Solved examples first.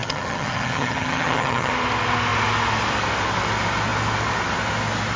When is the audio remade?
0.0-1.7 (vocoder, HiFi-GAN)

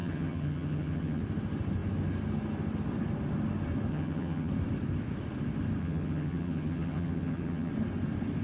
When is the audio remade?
0.0-1.2 (vocoder, HiFi-GAN); 3.9-4.5; 5.8-7.7

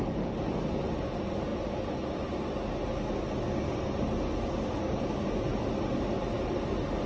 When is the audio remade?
none

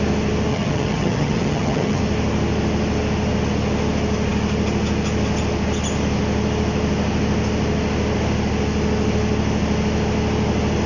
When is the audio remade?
0.5-2.0 (vocoder, HiFi-GAN)